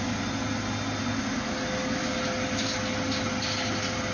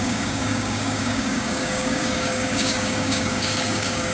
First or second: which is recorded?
first